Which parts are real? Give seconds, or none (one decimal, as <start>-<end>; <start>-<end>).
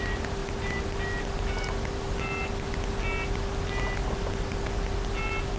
0.0-5.6